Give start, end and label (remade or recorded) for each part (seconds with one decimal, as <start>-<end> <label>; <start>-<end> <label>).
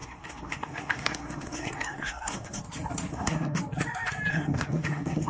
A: 0.0-2.6 remade; 2.6-3.1 recorded; 3.1-3.6 remade; 3.6-4.3 recorded; 4.3-5.3 remade